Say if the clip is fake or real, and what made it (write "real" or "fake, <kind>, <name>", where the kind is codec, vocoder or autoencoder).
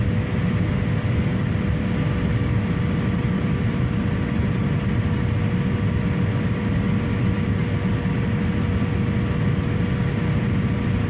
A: real